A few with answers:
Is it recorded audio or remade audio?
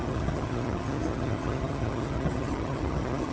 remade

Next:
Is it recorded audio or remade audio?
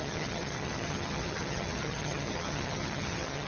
remade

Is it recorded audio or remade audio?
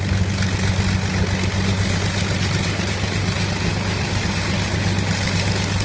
recorded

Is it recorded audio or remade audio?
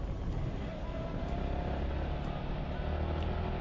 recorded